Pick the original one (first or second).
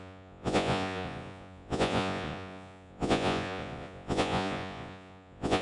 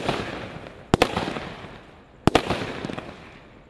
second